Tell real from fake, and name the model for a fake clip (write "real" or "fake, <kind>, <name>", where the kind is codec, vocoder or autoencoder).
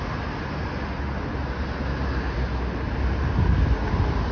real